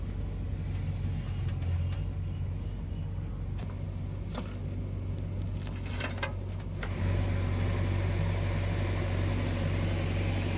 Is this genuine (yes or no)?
yes